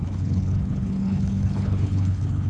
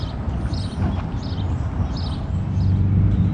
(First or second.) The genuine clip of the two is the second